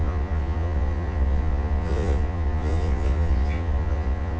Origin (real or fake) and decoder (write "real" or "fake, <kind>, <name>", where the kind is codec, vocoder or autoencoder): fake, vocoder, Vocos